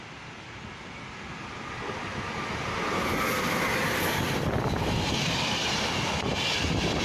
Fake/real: real